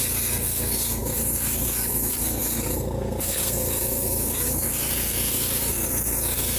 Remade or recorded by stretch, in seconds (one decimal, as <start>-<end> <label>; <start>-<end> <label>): 0.0-6.6 remade